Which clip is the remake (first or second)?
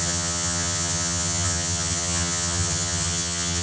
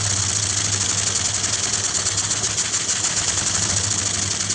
first